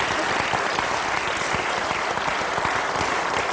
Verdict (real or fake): real